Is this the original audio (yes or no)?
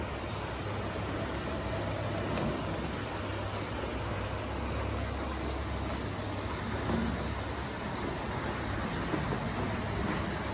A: yes